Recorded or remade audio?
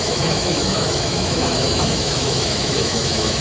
remade